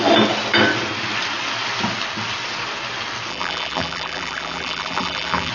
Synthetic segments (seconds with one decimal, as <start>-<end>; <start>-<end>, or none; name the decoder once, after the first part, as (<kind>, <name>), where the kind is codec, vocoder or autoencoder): 3.3-5.5 (vocoder, BigVGAN v2)

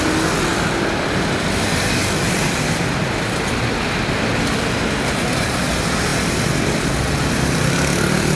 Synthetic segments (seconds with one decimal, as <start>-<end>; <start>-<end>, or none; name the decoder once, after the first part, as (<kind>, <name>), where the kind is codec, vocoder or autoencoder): 0.5-4.6 (vocoder, BigVGAN v2)

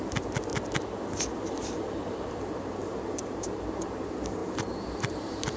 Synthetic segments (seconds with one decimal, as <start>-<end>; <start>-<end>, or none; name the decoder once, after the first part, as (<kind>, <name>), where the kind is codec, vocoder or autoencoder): 0.0-0.5 (vocoder, BigVGAN v2); 1.5-5.6